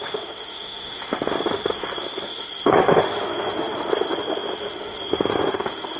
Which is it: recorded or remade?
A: remade